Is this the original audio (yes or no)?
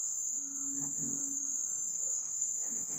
no